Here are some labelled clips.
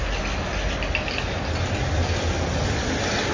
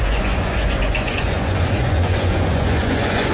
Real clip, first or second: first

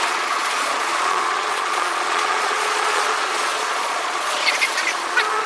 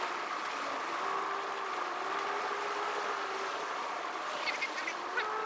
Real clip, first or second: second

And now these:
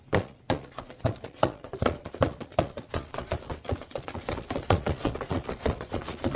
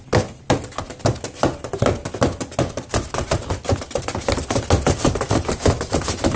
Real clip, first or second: second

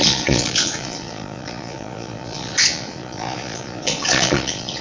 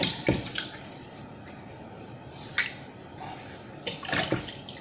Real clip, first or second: second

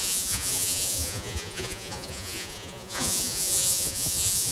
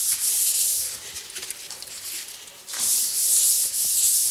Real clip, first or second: second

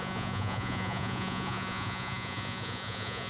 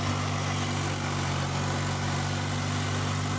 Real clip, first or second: second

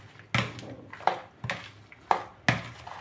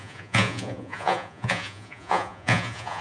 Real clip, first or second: first